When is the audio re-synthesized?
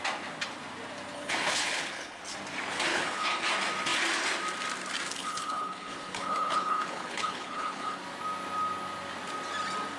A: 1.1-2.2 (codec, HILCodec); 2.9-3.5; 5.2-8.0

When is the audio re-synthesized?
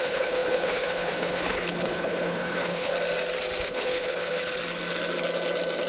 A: 0.0-2.9 (codec, HILCodec); 3.6-4.6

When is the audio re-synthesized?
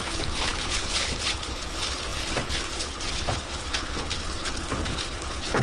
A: 0.0-5.6 (codec, HILCodec)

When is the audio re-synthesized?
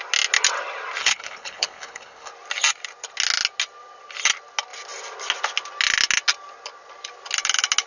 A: 1.0-2.3 (codec, HILCodec)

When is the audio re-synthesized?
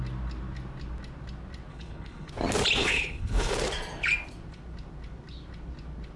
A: 1.7-2.3 (codec, HILCodec); 2.8-3.5